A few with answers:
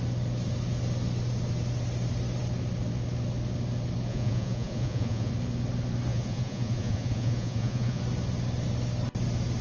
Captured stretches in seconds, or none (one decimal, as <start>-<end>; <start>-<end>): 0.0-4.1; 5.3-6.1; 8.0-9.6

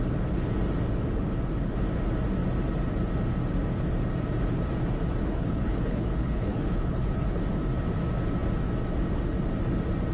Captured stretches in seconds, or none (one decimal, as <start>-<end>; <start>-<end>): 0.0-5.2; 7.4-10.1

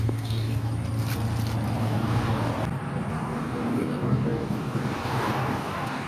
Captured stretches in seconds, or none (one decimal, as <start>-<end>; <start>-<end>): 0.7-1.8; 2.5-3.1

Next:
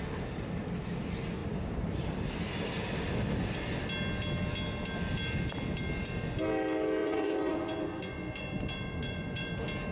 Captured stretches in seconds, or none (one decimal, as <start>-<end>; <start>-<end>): 0.0-7.0; 9.5-9.9

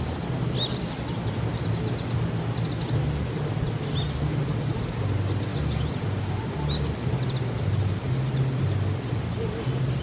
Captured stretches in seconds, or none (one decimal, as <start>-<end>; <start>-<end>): 0.0-10.0